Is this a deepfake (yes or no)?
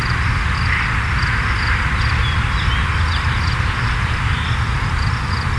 no